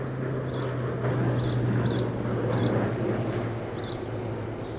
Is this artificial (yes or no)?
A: no